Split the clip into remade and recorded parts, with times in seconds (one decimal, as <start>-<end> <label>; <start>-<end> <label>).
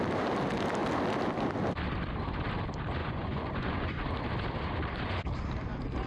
0.0-3.0 recorded; 3.0-4.0 remade; 4.0-6.1 recorded